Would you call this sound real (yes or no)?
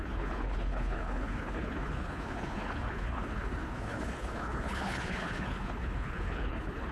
no